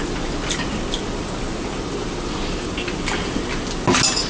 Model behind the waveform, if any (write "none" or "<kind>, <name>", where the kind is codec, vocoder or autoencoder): none